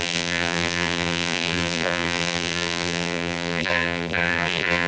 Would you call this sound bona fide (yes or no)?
no